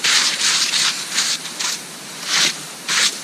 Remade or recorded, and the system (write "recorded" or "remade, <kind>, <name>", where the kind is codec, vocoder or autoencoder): remade, vocoder, BigVGAN v2